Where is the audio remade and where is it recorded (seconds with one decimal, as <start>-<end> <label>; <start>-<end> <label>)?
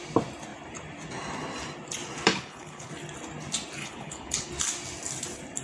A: 0.0-2.3 recorded; 2.3-2.9 remade; 2.9-3.8 recorded; 3.8-4.5 remade; 4.5-5.6 recorded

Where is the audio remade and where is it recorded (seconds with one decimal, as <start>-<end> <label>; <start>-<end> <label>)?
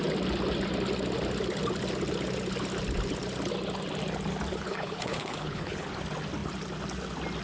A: 0.0-4.5 recorded; 4.5-5.9 remade; 5.9-7.4 recorded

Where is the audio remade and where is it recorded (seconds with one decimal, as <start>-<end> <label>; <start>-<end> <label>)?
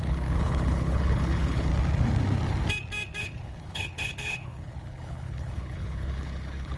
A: 0.0-1.7 remade; 1.7-3.2 recorded; 3.2-6.8 remade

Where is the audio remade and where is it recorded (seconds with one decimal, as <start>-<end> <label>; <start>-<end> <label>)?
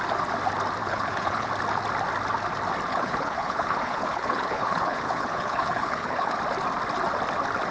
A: 0.0-0.8 recorded; 0.8-1.5 remade; 1.5-2.9 recorded; 2.9-6.4 remade; 6.4-7.7 recorded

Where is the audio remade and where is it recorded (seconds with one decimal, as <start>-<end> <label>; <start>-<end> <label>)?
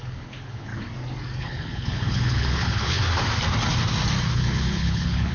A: 0.0-0.7 remade; 0.7-1.4 recorded; 1.4-3.0 remade; 3.0-4.3 recorded; 4.3-5.3 remade